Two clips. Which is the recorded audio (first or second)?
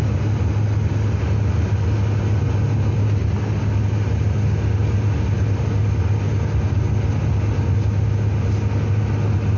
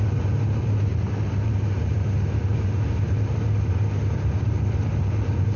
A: first